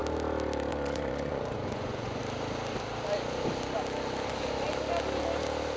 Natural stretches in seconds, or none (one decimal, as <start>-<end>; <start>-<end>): 0.0-0.7; 2.2-5.8